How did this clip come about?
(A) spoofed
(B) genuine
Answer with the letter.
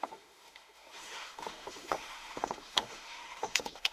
A